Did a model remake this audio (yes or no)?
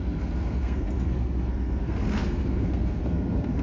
yes